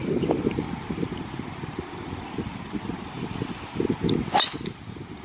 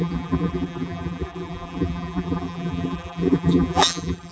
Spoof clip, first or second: second